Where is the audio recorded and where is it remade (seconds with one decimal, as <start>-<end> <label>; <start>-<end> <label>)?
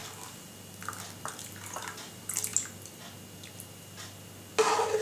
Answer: 0.0-5.0 recorded